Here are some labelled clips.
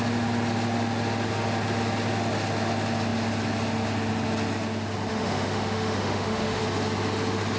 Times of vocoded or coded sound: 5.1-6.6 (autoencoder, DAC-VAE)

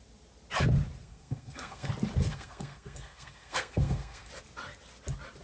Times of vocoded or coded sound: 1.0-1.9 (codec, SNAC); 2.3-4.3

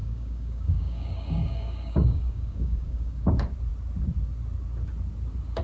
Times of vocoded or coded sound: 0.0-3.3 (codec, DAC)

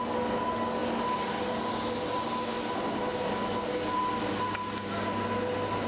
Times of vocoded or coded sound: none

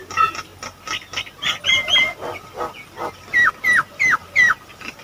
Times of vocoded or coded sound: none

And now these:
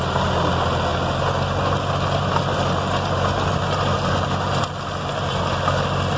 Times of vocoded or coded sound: none